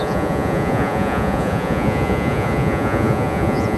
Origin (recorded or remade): remade